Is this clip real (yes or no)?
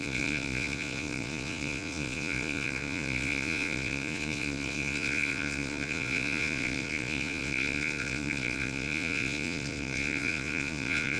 no